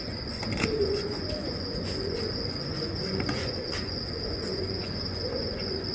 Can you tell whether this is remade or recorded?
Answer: remade